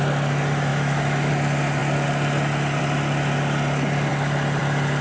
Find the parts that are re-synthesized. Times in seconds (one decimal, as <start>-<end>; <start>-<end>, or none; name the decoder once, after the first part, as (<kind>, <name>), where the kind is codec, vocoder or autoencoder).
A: 0.7-1.3 (autoencoder, DAC-VAE)